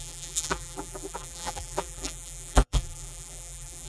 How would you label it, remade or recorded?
remade